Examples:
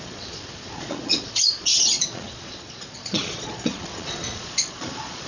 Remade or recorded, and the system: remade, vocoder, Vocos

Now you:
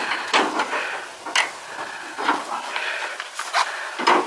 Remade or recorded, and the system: recorded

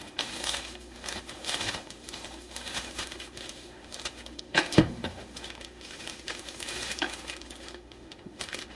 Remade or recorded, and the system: remade, autoencoder, DAC-VAE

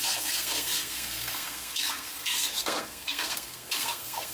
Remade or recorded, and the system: remade, codec, SNAC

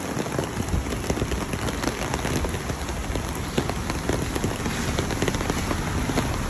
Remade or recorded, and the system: recorded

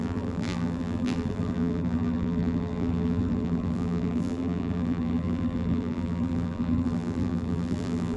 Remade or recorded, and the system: remade, vocoder, BigVGAN v2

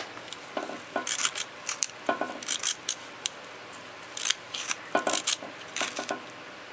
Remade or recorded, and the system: remade, vocoder, BigVGAN v2